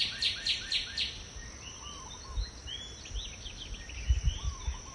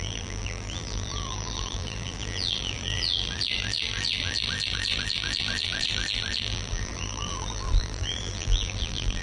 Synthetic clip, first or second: second